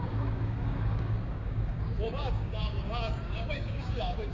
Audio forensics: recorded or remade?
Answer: remade